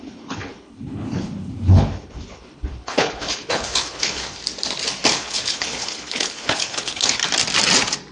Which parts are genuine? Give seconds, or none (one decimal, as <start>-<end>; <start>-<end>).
4.4-5.1; 7.2-8.1